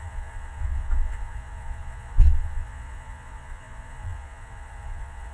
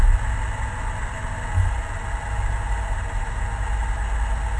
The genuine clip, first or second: second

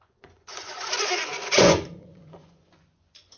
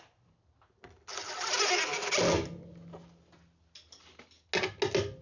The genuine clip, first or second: second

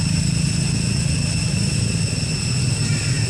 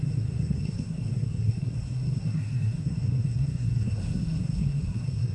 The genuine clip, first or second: first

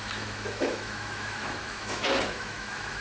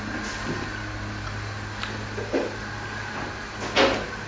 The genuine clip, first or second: second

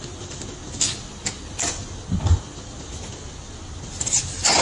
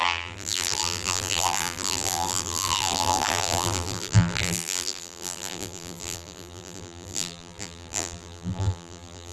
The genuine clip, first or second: first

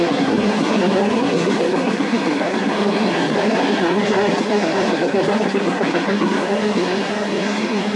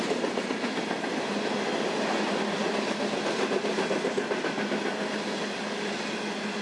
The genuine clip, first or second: second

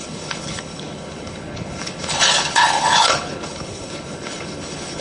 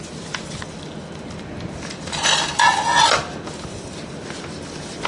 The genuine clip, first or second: second